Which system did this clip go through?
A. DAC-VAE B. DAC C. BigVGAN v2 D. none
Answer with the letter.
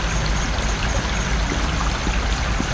D